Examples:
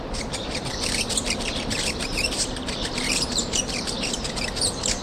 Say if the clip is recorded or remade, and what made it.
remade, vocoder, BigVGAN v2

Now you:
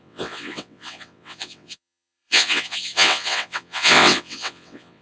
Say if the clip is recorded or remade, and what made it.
remade, vocoder, WaveNeXt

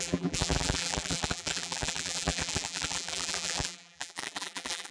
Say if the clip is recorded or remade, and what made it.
remade, vocoder, BigVGAN v2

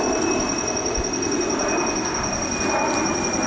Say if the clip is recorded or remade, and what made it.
recorded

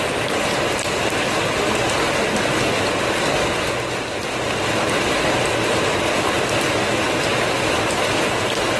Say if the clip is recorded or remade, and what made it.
recorded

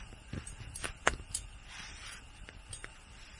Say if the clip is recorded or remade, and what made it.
recorded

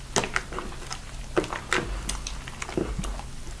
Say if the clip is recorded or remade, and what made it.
recorded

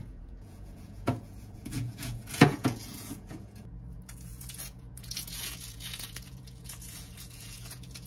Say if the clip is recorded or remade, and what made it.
remade, vocoder, Vocos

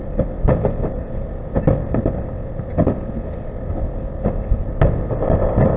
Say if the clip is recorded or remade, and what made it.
recorded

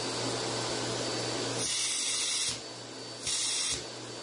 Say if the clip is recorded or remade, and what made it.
recorded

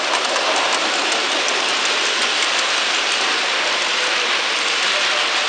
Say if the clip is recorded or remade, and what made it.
recorded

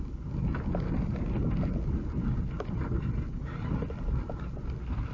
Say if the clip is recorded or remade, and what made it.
recorded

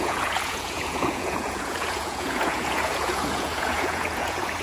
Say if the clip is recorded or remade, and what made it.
remade, vocoder, Vocos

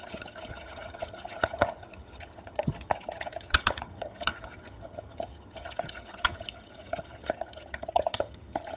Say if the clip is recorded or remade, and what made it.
remade, vocoder, HiFi-GAN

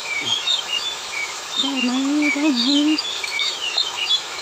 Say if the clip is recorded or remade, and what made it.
remade, autoencoder, DAC-VAE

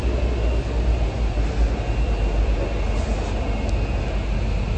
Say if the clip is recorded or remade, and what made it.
recorded